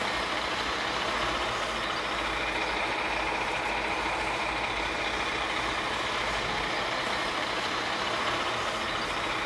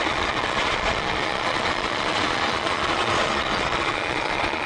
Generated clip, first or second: second